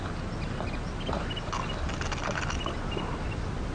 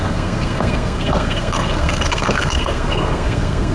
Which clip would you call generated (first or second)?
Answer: second